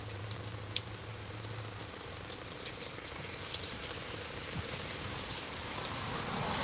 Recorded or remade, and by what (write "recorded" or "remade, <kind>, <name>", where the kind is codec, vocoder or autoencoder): remade, vocoder, BigVGAN v2